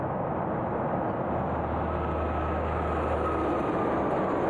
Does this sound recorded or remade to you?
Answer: recorded